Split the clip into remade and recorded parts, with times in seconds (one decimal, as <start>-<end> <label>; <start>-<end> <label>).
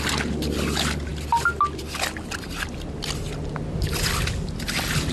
0.0-5.1 recorded